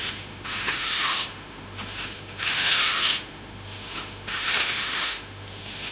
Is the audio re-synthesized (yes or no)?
yes